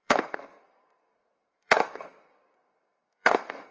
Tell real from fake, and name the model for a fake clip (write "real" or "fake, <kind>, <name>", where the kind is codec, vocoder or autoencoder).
fake, codec, SNAC